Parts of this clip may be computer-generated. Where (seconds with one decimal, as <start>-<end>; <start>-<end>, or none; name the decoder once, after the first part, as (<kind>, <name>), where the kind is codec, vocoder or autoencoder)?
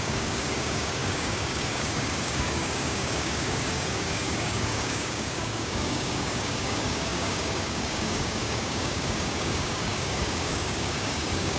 0.0-11.6 (codec, DAC)